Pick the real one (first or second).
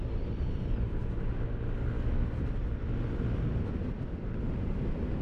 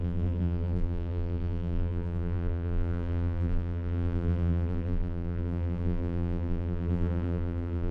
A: first